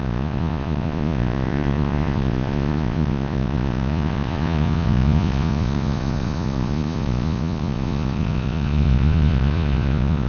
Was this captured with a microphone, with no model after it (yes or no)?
no